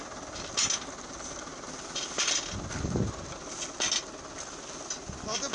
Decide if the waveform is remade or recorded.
recorded